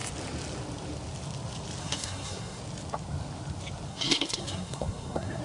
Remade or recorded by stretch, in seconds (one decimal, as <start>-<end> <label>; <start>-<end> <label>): 0.0-1.8 recorded; 1.8-2.6 remade; 2.6-3.9 recorded; 3.9-5.4 remade